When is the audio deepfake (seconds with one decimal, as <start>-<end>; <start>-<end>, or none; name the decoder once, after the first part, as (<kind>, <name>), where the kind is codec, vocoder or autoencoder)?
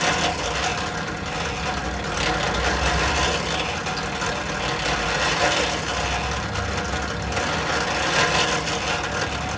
none